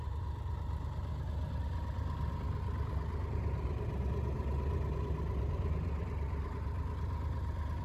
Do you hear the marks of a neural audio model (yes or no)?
no